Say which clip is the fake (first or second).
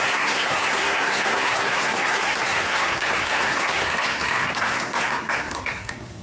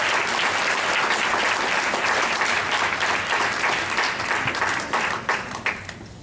first